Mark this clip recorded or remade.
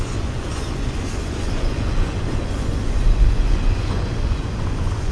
remade